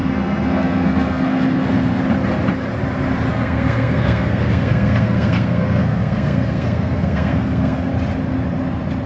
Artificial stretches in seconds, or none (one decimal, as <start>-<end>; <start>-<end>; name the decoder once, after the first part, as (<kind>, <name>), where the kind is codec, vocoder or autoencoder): 0.0-2.0 (codec, SNAC); 3.3-7.9